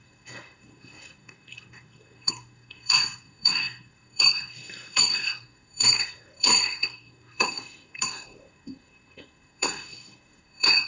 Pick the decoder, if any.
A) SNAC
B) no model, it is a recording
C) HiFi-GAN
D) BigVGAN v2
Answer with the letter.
A